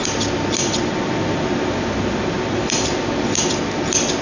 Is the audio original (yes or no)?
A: yes